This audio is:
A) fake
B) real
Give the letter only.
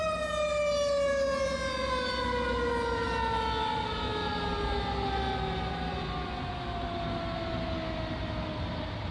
B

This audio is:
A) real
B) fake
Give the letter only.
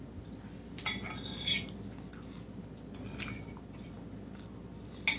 A